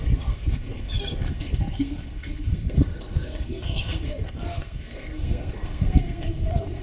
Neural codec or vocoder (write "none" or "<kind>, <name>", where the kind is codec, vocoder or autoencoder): codec, SNAC